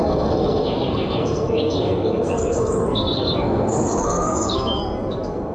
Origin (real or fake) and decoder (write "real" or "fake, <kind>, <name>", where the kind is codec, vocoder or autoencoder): fake, codec, SNAC